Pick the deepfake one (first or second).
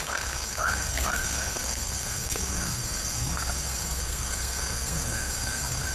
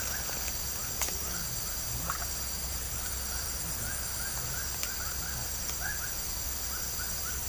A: first